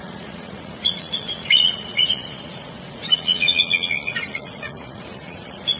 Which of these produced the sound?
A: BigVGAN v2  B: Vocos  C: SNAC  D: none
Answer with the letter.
B